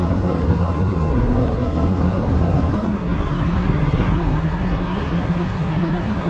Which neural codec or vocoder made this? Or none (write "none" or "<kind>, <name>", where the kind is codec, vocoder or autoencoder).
codec, SNAC